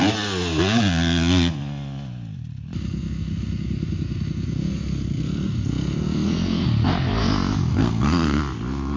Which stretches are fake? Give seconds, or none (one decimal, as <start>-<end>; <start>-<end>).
7.7-8.4